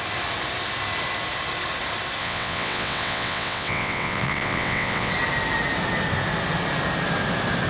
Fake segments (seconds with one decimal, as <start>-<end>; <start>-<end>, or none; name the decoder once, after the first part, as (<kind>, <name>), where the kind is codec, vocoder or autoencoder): 2.2-5.1 (vocoder, WaveNeXt)